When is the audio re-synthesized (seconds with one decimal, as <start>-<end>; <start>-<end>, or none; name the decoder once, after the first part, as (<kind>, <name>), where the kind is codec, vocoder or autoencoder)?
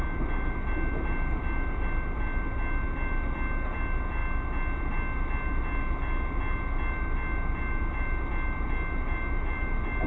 none